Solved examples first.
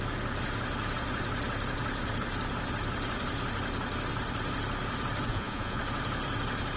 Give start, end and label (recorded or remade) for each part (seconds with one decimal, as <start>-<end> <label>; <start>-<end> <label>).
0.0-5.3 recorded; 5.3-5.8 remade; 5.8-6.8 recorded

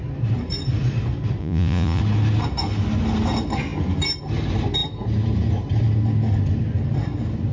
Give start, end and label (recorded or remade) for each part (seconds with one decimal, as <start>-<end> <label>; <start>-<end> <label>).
0.0-1.4 recorded; 1.4-2.0 remade; 2.0-7.5 recorded

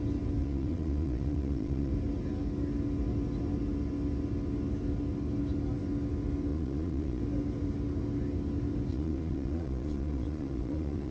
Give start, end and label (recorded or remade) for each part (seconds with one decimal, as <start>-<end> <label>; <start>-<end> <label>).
0.0-0.4 recorded; 0.4-1.9 remade; 1.9-6.5 recorded; 6.5-7.2 remade; 7.2-8.9 recorded; 8.9-11.1 remade

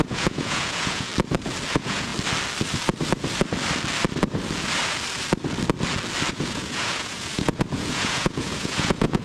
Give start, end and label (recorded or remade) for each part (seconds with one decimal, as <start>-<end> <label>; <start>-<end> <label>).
0.0-1.1 remade; 1.1-1.7 recorded; 1.7-2.1 remade; 2.1-6.3 recorded; 6.3-9.2 remade

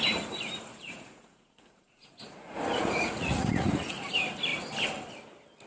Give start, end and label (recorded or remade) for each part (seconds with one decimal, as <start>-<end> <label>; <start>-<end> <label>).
0.0-0.7 recorded; 0.7-4.1 remade; 4.1-5.7 recorded